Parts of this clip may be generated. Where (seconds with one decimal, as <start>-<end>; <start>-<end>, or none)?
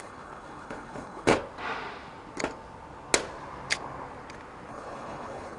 0.0-1.3; 4.7-5.6